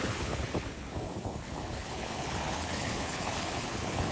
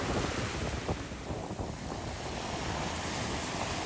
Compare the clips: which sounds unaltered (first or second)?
second